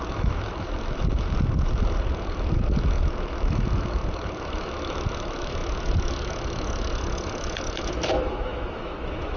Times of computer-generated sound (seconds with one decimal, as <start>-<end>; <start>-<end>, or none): 0.0-9.4